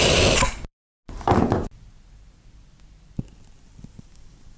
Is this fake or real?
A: real